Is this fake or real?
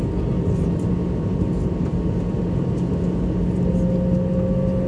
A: real